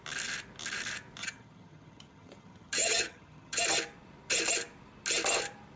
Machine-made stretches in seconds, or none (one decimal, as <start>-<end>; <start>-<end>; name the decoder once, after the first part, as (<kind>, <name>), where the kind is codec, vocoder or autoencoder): 1.2-3.6 (vocoder, HiFi-GAN)